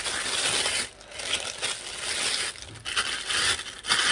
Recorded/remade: recorded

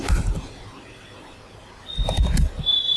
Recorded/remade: recorded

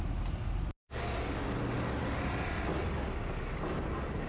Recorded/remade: recorded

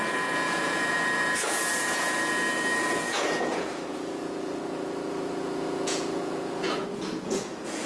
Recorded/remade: remade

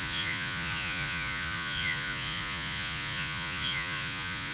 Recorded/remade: remade